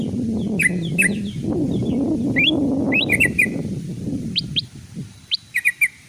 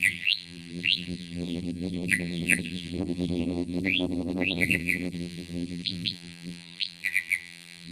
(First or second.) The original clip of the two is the first